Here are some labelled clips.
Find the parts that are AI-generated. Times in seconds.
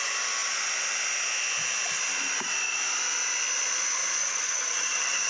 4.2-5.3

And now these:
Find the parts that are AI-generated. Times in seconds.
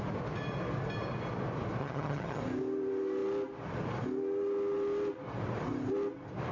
1.8-2.4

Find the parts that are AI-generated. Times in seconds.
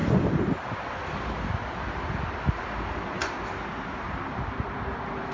none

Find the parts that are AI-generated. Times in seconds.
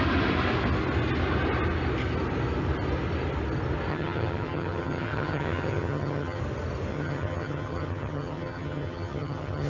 3.9-6.4; 6.9-9.7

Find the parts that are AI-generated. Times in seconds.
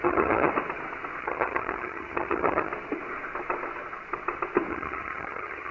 0.0-0.5; 1.2-2.7; 4.7-5.7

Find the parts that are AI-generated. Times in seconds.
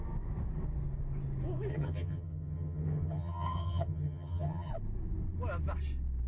1.7-4.7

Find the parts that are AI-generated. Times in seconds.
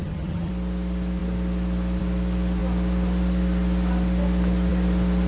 0.0-0.5